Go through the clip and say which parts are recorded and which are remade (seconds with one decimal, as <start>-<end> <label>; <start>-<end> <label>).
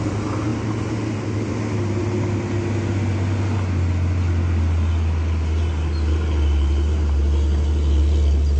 0.0-8.6 recorded